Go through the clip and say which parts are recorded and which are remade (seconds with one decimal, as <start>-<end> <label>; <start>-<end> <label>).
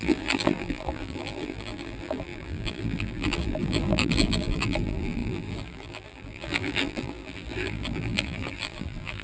0.0-9.2 remade